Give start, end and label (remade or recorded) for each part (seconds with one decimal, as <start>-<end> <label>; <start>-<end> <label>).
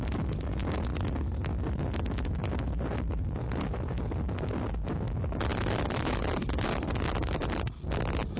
0.0-8.4 recorded